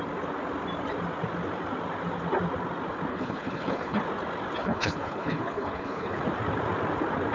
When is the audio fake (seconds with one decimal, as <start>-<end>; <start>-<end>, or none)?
3.1-4.0; 4.6-6.2